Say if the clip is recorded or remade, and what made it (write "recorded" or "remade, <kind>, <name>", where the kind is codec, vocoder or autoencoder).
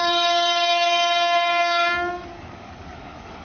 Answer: remade, codec, DAC